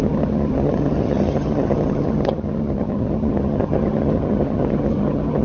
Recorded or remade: remade